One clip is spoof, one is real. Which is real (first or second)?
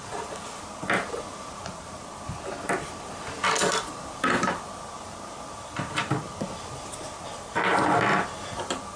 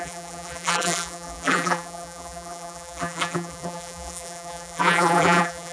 first